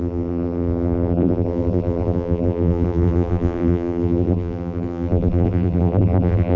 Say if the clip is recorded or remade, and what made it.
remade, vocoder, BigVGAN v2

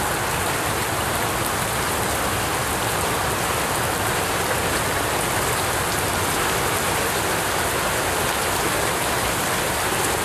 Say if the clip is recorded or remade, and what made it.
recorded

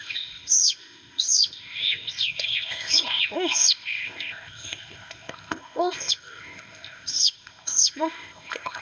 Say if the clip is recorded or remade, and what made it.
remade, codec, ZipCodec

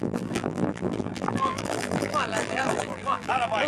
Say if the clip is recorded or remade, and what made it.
remade, vocoder, BigVGAN v2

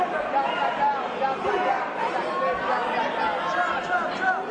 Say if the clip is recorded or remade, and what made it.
recorded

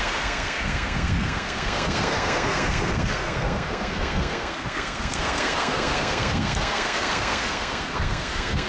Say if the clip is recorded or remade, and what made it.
remade, codec, SNAC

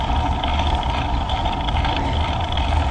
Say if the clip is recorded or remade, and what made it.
recorded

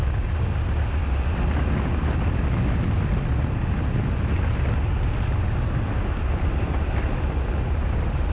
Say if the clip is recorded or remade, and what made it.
recorded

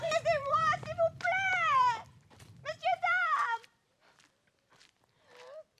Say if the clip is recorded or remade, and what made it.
remade, vocoder, BigVGAN v2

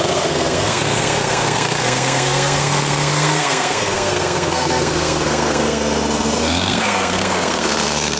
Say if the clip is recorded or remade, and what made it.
remade, codec, SNAC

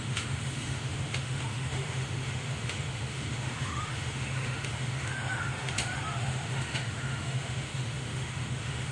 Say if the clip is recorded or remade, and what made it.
remade, autoencoder, DAC-VAE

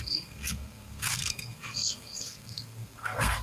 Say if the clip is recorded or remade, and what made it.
remade, codec, SNAC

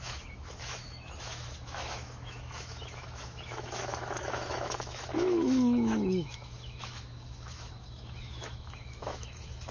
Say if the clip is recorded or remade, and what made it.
remade, autoencoder, DAC-VAE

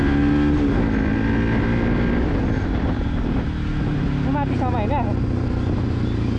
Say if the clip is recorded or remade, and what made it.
recorded